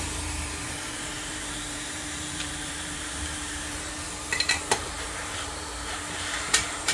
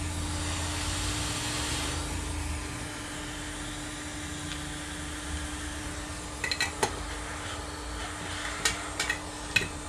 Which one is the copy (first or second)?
first